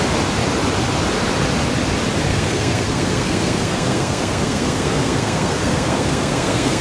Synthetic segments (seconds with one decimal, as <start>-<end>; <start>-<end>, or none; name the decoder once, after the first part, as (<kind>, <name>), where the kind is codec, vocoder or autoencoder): 2.3-6.8 (codec, SNAC)